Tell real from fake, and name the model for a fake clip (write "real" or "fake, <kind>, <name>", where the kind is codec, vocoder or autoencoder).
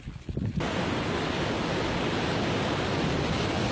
real